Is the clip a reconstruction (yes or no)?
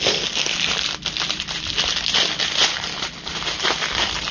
no